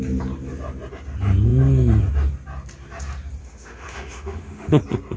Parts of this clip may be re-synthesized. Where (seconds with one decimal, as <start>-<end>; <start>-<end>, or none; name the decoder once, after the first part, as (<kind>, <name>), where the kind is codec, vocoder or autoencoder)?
3.4-4.8 (autoencoder, DAC-VAE)